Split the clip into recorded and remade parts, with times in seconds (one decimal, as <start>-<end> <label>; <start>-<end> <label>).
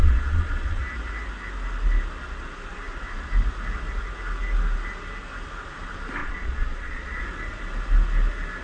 0.0-0.8 remade; 0.8-6.2 recorded; 6.2-7.2 remade; 7.2-8.6 recorded